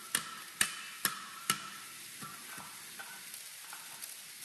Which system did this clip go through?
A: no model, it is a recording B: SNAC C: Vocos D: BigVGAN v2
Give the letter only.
A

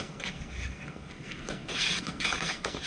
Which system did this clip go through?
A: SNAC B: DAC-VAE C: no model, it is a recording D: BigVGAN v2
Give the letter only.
A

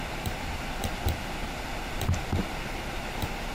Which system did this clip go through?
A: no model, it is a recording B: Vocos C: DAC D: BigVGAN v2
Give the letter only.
A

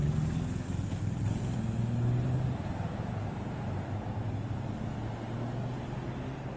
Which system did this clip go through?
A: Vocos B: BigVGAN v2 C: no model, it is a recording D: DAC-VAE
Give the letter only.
C